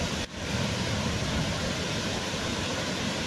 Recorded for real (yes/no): yes